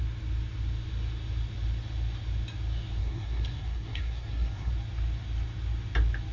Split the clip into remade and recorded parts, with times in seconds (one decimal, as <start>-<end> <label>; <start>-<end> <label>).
0.0-3.0 recorded; 3.0-4.7 remade; 4.7-6.3 recorded